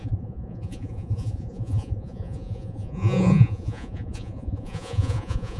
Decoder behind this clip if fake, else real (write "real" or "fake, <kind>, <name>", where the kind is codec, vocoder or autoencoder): fake, vocoder, Vocos